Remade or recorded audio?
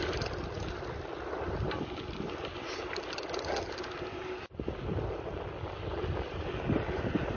recorded